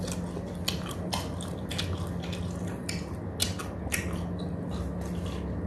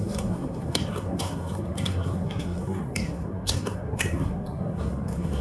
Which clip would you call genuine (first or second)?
first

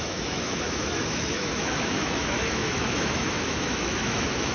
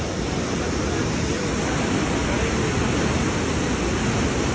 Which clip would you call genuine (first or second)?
second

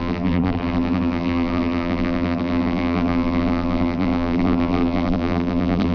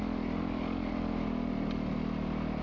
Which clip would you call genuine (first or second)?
second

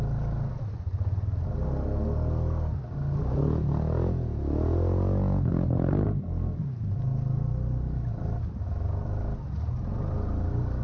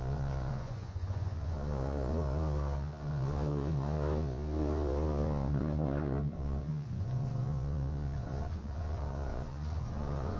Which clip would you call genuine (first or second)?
first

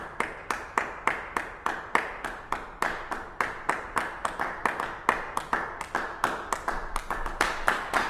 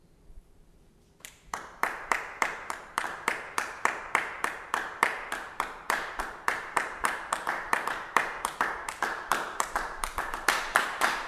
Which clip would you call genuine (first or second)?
first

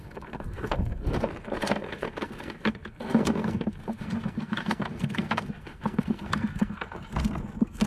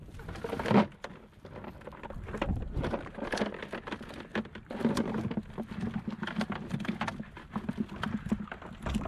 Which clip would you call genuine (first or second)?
second